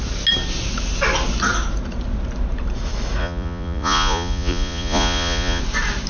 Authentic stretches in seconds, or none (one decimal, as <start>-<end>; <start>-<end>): 0.0-3.2; 5.6-6.1